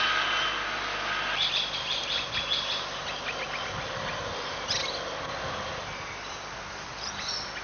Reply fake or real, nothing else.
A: real